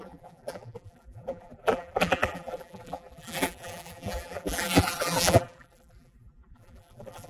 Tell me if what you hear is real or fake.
fake